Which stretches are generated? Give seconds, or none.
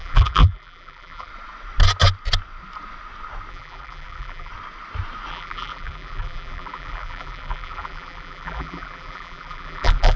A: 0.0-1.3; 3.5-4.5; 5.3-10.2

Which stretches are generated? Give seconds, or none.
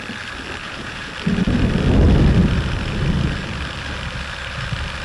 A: 0.6-1.1